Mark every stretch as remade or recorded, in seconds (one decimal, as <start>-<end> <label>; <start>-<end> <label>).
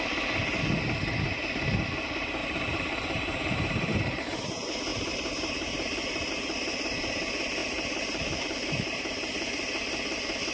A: 0.0-2.4 recorded; 2.4-4.2 remade; 4.2-4.9 recorded; 4.9-6.3 remade; 6.3-7.6 recorded; 7.6-9.6 remade; 9.6-10.5 recorded